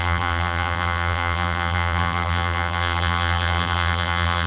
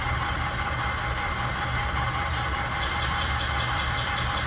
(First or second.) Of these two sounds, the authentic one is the second